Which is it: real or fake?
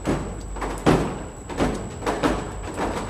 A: real